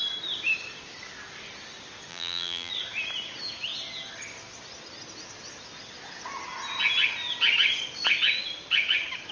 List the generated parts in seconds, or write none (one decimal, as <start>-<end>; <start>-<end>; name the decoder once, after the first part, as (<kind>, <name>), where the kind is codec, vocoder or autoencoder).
2.1-2.7 (vocoder, BigVGAN v2)